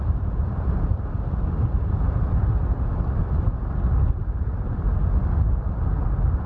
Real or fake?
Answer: real